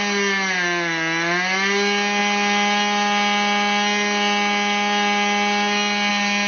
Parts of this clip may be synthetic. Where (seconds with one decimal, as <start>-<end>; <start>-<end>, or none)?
none